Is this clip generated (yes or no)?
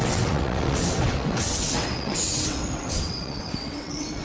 yes